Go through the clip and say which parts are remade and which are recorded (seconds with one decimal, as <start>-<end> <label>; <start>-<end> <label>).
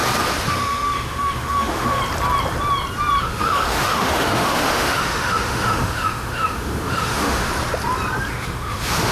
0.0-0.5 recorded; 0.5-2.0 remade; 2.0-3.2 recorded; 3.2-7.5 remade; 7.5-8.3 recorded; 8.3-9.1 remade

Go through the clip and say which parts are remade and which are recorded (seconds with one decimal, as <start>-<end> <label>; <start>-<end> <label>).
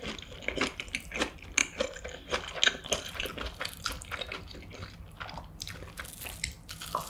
0.0-7.1 recorded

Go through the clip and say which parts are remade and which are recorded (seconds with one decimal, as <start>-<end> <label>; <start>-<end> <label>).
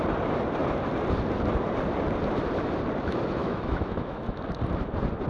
0.0-3.4 recorded; 3.4-4.4 remade; 4.4-5.3 recorded